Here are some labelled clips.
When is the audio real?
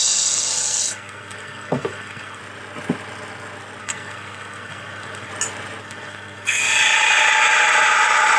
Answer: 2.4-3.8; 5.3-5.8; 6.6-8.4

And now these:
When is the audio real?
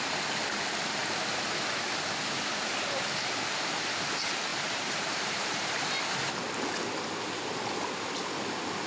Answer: 0.0-4.5; 6.1-8.9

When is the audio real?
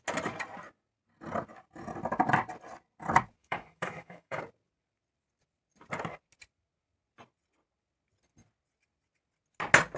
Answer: 0.0-3.4; 4.4-10.0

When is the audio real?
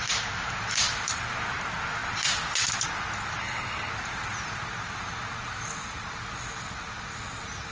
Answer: 0.0-3.4; 3.9-7.7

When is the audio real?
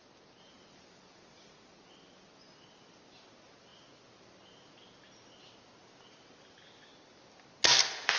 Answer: 0.0-8.2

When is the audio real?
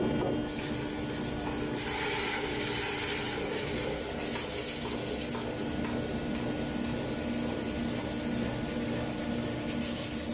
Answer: 0.0-10.3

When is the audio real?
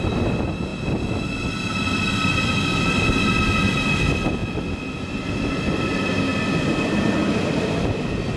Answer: 0.0-8.4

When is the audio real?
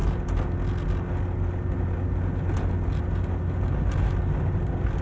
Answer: 0.0-5.0